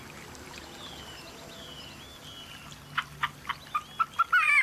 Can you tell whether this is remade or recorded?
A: recorded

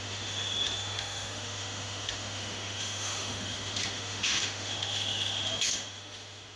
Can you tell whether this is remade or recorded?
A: remade